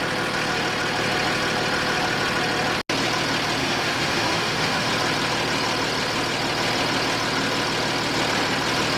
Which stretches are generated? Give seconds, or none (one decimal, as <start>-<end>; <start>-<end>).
3.6-4.9

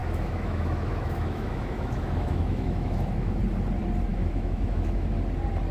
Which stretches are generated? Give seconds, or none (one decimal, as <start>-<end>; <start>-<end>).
0.0-3.4; 4.1-5.1